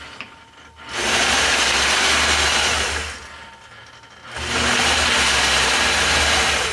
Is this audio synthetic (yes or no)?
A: no